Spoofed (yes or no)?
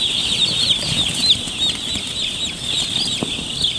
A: no